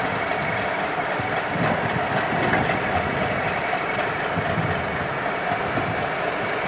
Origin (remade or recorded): recorded